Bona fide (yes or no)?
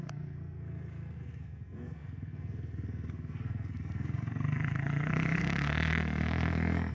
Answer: no